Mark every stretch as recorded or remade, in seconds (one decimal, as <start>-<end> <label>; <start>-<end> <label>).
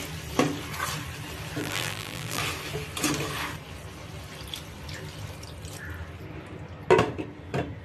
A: 0.0-1.6 recorded; 1.6-2.4 remade; 2.4-7.8 recorded